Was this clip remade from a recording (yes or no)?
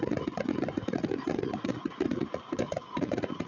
yes